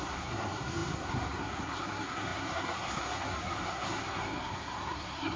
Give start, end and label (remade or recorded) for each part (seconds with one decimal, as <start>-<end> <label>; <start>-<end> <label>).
0.0-5.4 remade